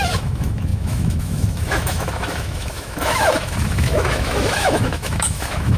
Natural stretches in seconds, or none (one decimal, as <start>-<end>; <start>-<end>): none